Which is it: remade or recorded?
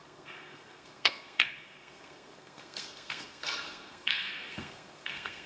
remade